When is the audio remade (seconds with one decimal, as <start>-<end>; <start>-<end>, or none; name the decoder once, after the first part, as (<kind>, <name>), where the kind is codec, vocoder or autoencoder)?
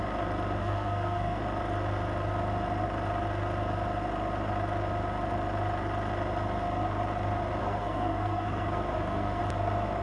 0.6-1.4 (codec, SNAC); 7.6-9.4